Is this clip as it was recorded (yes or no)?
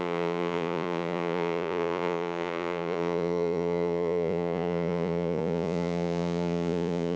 no